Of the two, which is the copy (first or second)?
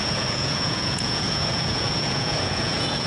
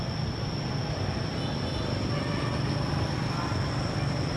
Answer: first